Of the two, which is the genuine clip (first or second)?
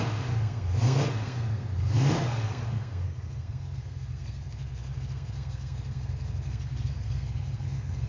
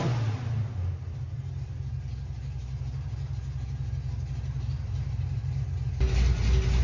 second